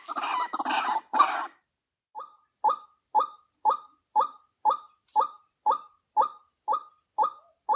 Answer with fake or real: real